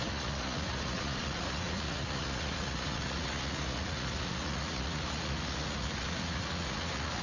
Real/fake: fake